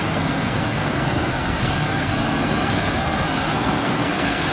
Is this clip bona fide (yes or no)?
no